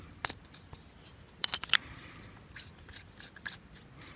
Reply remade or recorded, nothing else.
recorded